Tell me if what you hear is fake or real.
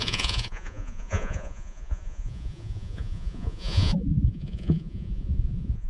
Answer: fake